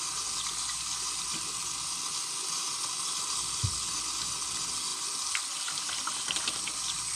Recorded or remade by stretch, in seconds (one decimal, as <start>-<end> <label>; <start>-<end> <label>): 0.0-7.2 recorded